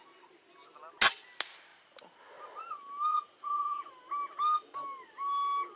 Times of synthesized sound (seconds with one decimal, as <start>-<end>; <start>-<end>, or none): 3.1-3.9